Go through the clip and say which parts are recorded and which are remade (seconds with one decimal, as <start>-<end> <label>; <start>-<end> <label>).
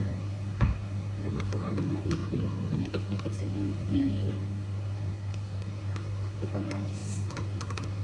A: 0.0-8.0 remade